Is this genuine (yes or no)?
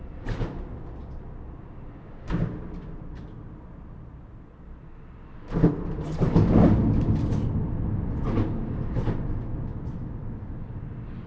yes